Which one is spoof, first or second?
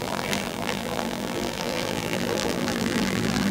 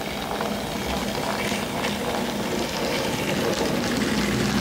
first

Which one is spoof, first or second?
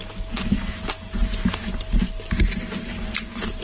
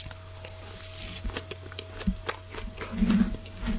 first